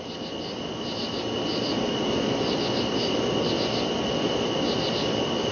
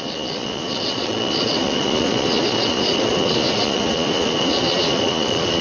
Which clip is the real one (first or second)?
first